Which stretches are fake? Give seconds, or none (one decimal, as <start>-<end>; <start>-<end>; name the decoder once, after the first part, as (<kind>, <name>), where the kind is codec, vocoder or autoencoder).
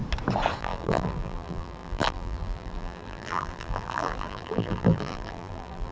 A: 0.6-5.9 (vocoder, BigVGAN v2)